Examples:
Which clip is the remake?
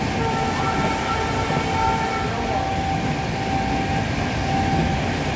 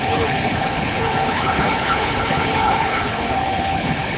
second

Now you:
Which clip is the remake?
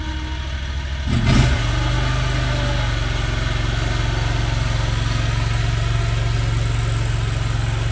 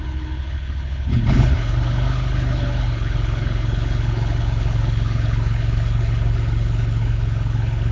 second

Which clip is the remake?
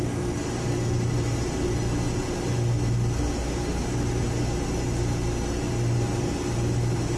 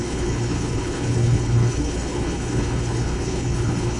second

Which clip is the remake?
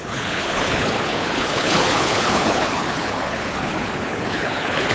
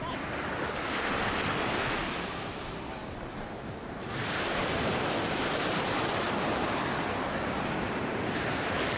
first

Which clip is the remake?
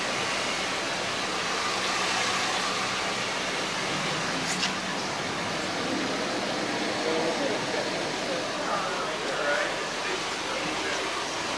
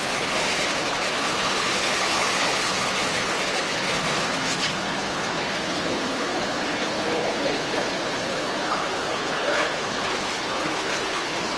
second